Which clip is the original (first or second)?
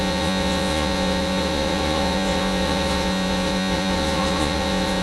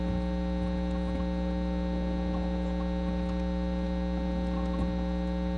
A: second